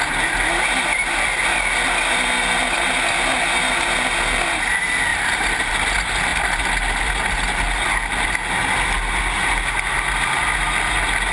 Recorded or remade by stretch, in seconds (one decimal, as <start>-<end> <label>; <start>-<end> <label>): 0.0-5.1 recorded; 5.1-5.7 remade; 5.7-11.3 recorded